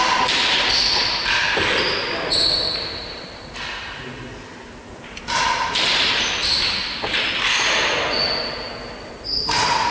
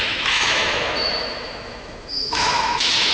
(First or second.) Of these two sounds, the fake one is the second